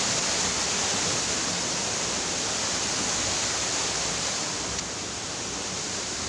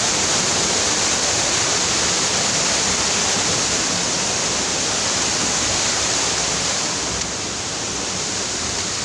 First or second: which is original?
first